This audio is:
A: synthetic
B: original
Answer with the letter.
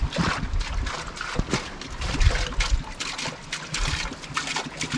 B